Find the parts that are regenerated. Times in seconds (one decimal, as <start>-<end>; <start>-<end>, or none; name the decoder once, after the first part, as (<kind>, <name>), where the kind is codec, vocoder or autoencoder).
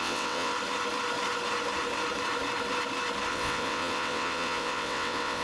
0.0-0.5 (vocoder, WaveNeXt); 3.3-5.4